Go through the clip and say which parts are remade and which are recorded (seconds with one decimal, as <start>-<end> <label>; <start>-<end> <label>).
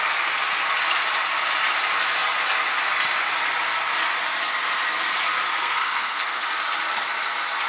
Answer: 0.0-5.6 recorded; 5.6-6.5 remade; 6.5-7.7 recorded